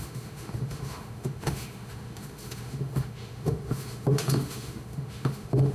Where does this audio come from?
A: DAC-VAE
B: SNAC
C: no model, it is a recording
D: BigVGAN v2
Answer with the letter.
A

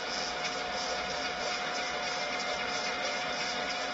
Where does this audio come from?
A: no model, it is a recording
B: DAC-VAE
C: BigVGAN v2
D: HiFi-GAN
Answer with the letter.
A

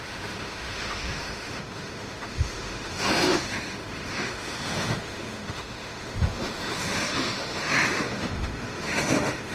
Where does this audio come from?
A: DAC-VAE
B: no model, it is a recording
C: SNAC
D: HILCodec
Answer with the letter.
A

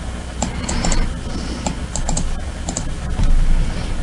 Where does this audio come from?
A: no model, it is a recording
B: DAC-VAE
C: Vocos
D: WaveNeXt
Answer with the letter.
A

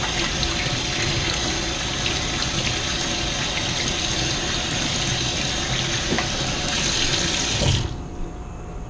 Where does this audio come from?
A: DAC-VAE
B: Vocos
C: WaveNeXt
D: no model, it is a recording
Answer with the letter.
D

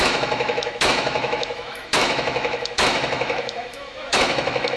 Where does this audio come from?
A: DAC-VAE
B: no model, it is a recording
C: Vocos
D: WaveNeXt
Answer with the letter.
A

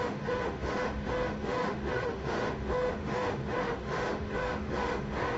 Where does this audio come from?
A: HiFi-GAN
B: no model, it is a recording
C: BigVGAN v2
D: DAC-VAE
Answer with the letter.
D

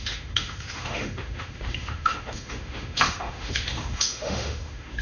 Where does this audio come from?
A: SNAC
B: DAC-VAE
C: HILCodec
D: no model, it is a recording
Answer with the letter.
B